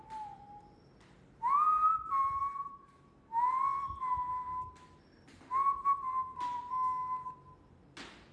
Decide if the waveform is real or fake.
real